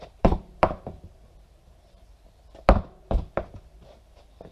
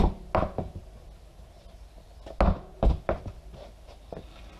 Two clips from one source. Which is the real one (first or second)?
second